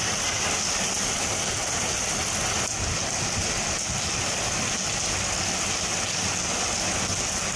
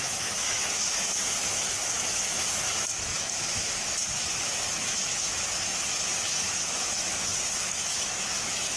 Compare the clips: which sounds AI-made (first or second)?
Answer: second